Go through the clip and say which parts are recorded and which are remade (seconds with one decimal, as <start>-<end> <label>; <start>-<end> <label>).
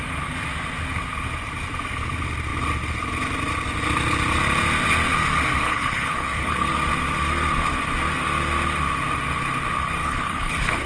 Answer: 0.0-5.6 recorded; 5.6-6.7 remade; 6.7-10.0 recorded; 10.0-10.9 remade